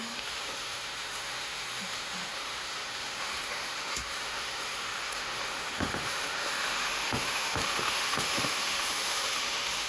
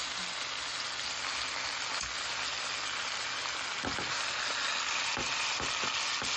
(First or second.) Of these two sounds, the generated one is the first